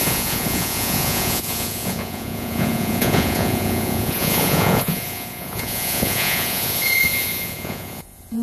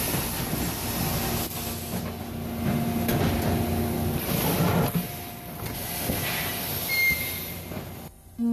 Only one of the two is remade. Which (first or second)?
first